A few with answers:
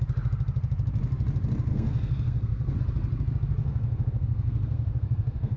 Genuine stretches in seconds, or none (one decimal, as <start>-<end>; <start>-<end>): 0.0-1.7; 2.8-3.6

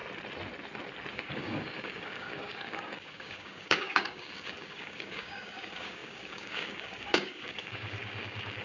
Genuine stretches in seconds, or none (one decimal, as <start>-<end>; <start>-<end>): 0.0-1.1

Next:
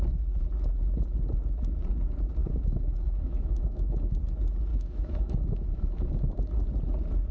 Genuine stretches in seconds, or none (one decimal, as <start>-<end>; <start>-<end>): 0.0-2.4; 4.2-4.7; 6.5-7.3

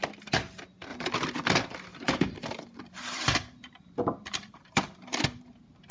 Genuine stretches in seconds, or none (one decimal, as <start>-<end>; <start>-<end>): 0.0-1.9; 5.4-5.9

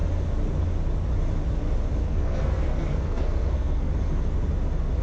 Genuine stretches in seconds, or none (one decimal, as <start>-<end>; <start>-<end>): 0.0-2.0; 3.9-5.0